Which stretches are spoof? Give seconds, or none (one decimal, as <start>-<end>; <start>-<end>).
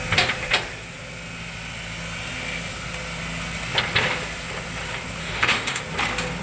5.2-5.8